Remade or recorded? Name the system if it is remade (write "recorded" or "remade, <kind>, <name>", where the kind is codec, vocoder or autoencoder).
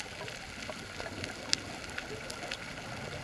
recorded